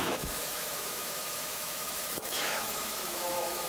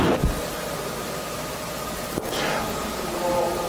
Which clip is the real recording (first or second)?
second